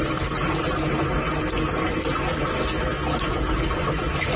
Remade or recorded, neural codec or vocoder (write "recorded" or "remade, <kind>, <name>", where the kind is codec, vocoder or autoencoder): recorded